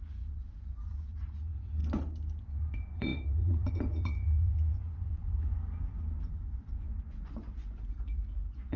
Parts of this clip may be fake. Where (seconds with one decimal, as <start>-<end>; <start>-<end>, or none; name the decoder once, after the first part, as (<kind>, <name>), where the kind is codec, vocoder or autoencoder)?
0.0-1.8 (vocoder, Vocos); 2.4-5.6; 6.4-8.8